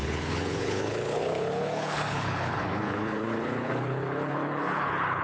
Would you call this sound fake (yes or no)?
yes